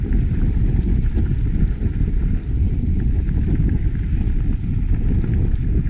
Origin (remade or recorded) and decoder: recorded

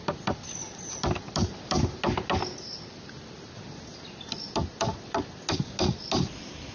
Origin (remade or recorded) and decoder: recorded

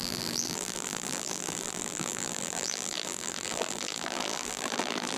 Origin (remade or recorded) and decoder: remade, vocoder, BigVGAN v2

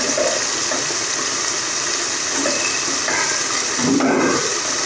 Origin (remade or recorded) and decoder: recorded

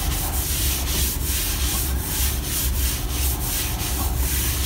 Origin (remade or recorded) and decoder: recorded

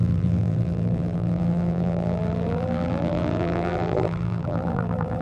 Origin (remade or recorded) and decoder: remade, vocoder, BigVGAN v2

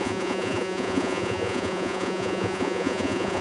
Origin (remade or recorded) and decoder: remade, vocoder, Vocos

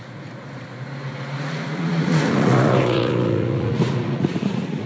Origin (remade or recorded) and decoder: remade, vocoder, Vocos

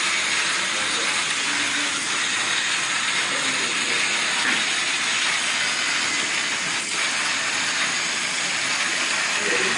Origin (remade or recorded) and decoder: recorded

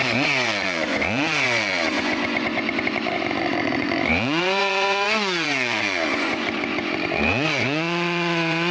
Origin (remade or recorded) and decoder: remade, vocoder, Vocos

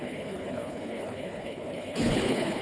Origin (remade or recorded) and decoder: remade, codec, HILCodec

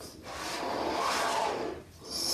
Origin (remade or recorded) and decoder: recorded